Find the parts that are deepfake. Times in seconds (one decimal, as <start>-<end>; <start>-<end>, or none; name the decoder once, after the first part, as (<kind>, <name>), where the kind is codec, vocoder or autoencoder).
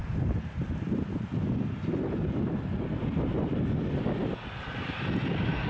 none